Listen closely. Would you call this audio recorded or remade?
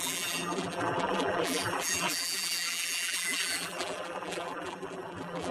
remade